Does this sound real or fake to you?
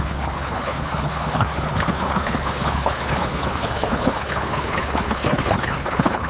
fake